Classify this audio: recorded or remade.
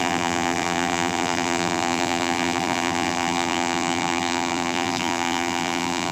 remade